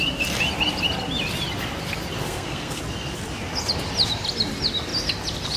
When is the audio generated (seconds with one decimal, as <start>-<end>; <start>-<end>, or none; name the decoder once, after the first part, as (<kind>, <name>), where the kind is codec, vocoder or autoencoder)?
2.2-2.8 (codec, SNAC)